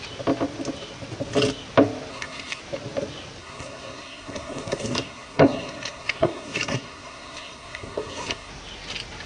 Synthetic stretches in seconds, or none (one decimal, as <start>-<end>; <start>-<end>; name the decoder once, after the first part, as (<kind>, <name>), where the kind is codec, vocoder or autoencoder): 2.1-2.6 (codec, SNAC); 3.4-8.5